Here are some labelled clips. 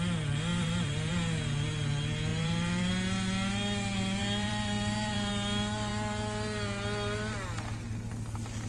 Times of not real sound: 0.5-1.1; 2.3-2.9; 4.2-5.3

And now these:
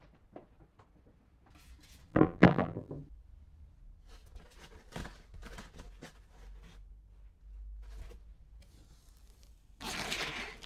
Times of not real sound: 2.1-2.9

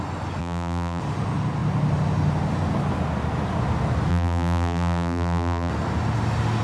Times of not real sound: 0.4-1.0; 4.1-5.7

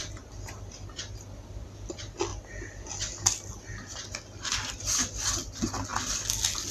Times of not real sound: none

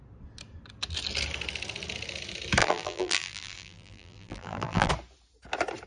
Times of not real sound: 2.6-4.9

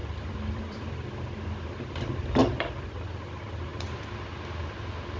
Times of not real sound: 0.0-0.9

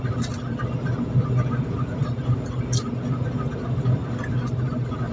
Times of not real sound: none